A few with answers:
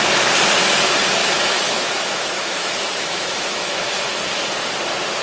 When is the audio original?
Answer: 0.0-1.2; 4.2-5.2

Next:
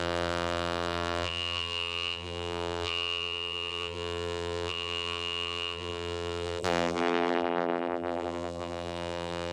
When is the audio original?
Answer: none

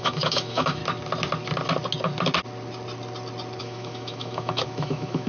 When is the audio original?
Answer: 0.8-3.6

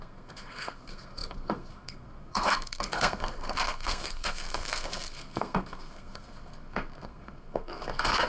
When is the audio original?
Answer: none

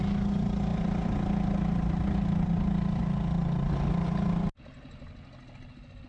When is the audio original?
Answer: 0.0-6.1

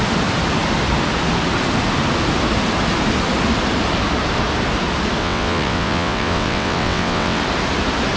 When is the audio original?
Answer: 0.0-5.2; 7.4-8.2

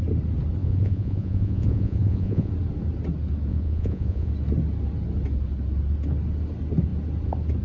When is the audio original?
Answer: 0.0-0.6; 2.5-3.5; 4.3-7.6

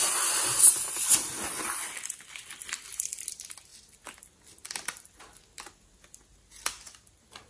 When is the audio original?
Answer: 0.0-7.5